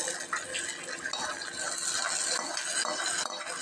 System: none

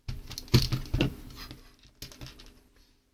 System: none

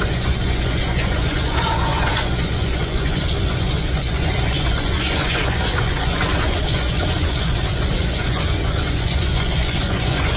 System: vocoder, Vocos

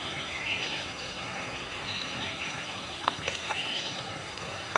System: codec, SNAC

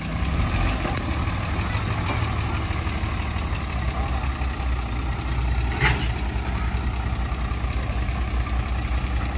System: none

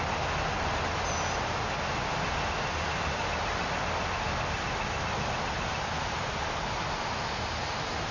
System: none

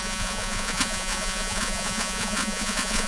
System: vocoder, Vocos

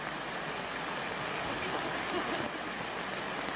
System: none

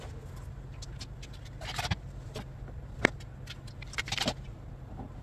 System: none